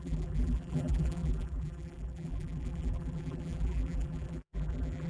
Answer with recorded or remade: remade